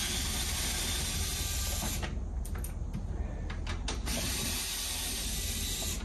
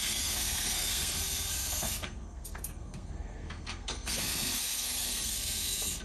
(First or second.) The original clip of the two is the first